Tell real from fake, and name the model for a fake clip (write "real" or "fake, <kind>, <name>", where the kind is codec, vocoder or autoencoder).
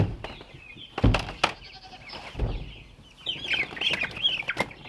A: real